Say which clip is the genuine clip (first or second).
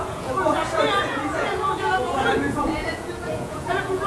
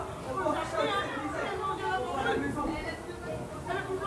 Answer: second